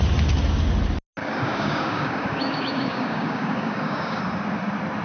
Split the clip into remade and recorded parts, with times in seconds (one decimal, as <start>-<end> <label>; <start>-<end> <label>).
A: 0.0-1.2 recorded; 1.2-4.2 remade; 4.2-5.0 recorded